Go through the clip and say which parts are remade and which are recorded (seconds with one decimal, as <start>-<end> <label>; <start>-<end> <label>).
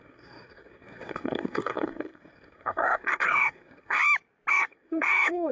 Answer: 0.0-4.0 remade; 4.0-4.5 recorded; 4.5-5.5 remade